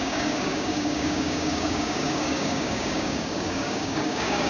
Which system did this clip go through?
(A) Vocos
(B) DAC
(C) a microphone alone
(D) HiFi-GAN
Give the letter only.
B